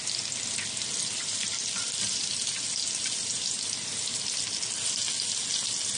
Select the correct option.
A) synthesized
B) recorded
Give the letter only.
B